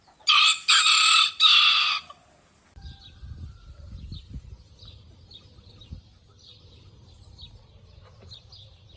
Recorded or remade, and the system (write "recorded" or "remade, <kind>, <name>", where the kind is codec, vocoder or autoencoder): recorded